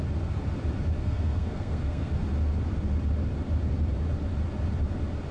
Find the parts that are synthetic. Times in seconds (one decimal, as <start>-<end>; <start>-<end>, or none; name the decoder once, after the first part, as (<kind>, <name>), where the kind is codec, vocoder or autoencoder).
1.0-2.1 (codec, SNAC)